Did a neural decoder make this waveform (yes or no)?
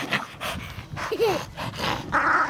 no